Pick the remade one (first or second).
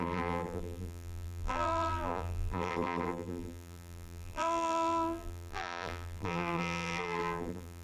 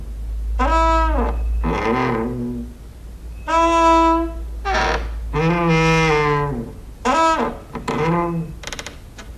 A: first